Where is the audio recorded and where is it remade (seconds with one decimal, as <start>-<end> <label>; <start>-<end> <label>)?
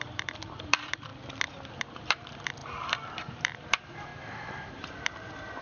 0.0-1.1 remade; 1.1-1.8 recorded; 1.8-4.1 remade; 4.1-4.7 recorded; 4.7-5.6 remade